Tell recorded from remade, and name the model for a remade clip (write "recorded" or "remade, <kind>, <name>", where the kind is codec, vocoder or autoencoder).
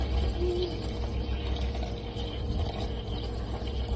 recorded